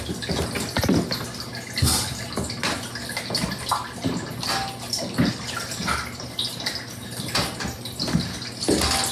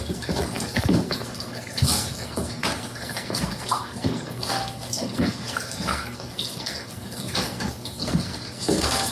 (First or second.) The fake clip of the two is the second